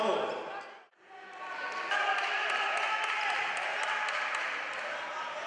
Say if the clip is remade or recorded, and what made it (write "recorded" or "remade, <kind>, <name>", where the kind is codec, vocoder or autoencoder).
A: recorded